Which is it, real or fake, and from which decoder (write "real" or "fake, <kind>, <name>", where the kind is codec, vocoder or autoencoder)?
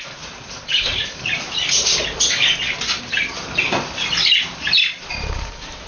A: fake, vocoder, BigVGAN v2